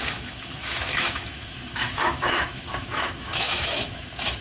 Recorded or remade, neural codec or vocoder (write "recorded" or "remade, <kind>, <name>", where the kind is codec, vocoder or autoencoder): remade, autoencoder, DAC-VAE